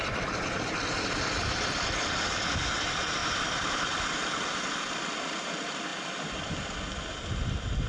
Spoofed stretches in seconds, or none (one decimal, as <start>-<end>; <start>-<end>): 3.2-5.0